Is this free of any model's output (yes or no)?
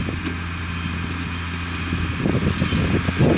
yes